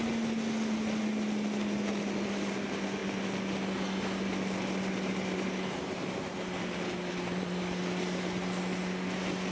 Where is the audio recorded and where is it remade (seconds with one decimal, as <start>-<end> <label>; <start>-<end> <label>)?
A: 0.0-9.5 recorded